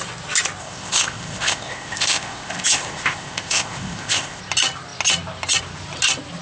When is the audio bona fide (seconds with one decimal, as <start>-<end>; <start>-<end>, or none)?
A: 0.0-0.6; 4.4-6.4